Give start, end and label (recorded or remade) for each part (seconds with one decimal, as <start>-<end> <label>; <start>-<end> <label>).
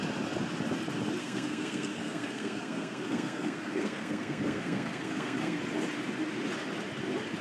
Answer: 0.0-1.2 recorded; 1.2-5.6 remade; 5.6-7.4 recorded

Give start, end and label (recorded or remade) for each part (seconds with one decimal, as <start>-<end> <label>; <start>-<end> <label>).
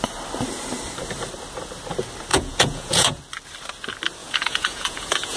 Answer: 0.0-2.3 recorded; 2.3-3.2 remade; 3.2-4.2 recorded; 4.2-5.4 remade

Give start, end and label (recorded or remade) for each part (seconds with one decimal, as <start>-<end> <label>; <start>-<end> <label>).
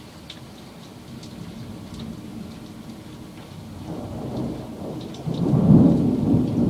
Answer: 0.0-0.9 remade; 0.9-4.9 recorded; 4.9-6.7 remade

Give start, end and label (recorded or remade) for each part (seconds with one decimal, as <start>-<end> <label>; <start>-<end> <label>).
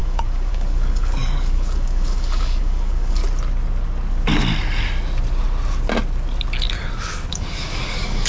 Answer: 0.0-3.2 remade; 3.2-7.3 recorded; 7.3-8.3 remade